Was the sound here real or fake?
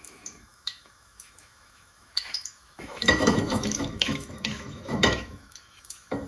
fake